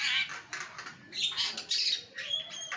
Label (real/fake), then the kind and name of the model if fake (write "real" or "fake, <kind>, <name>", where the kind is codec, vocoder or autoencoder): real